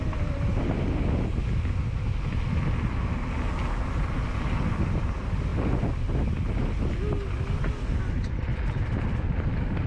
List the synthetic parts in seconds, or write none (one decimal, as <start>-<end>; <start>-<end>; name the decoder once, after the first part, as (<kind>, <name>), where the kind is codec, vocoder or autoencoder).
none

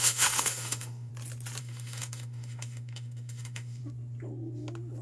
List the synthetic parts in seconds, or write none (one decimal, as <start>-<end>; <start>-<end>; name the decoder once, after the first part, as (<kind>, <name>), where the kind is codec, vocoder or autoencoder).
0.0-1.1 (autoencoder, DAC-VAE); 1.6-3.8